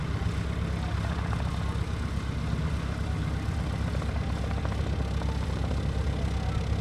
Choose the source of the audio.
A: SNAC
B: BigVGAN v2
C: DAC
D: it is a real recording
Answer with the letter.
D